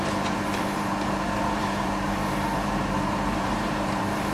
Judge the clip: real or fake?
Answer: fake